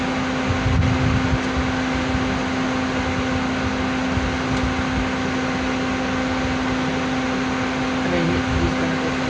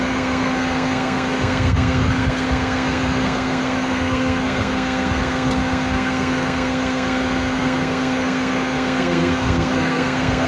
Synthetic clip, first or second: second